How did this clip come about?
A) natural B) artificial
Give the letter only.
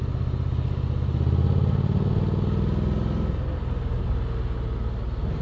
A